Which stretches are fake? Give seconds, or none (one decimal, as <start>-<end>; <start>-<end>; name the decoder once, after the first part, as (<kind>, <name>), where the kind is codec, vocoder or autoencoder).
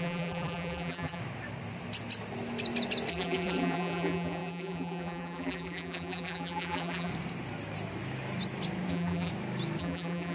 0.0-1.2 (vocoder, BigVGAN v2); 3.1-7.1; 8.9-9.3; 9.8-10.3